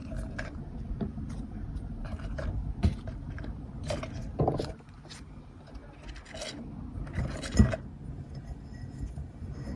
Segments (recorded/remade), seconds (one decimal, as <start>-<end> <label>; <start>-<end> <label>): 0.0-5.8 remade; 5.8-9.8 recorded